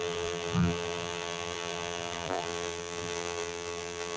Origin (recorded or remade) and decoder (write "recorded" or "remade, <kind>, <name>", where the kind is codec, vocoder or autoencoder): remade, vocoder, BigVGAN v2